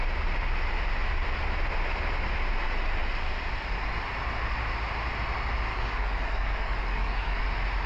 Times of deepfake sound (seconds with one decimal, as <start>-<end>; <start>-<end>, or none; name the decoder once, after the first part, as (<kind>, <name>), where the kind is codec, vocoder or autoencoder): 5.7-7.4 (codec, DAC)